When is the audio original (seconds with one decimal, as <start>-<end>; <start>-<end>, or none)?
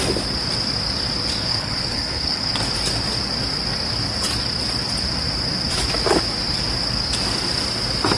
0.0-1.5; 2.6-8.2